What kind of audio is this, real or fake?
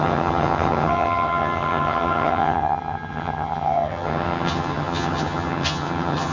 fake